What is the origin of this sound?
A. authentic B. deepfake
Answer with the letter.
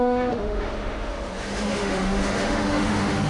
B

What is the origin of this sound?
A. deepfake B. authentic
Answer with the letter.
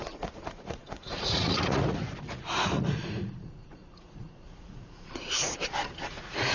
A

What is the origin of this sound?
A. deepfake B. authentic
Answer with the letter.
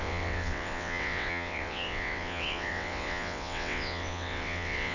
A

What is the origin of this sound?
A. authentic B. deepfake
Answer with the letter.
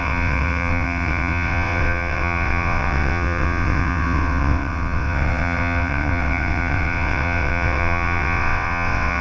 B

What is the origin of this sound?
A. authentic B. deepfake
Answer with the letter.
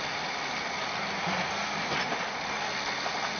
A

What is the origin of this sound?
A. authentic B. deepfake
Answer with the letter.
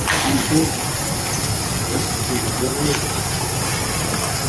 A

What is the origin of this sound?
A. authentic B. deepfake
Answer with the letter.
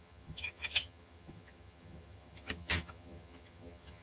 B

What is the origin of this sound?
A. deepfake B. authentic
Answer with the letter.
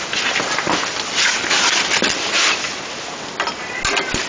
B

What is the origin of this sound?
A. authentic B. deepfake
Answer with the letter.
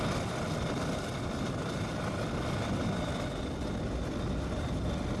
A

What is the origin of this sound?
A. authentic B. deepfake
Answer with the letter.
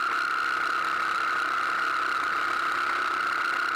A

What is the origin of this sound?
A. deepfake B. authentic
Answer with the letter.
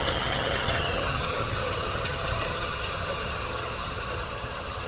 A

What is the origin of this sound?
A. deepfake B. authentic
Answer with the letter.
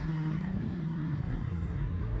A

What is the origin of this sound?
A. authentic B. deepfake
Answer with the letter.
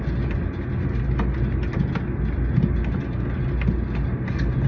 A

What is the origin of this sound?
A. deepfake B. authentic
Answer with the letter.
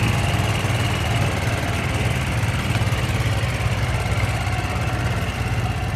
B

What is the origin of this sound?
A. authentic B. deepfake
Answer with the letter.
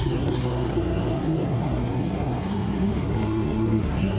B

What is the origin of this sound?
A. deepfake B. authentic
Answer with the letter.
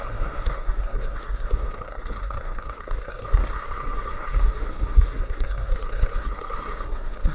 A